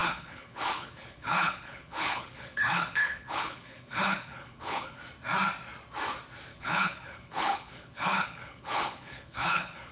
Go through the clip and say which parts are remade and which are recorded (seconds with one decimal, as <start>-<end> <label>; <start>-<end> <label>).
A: 0.0-5.0 remade; 5.0-6.5 recorded; 6.5-9.9 remade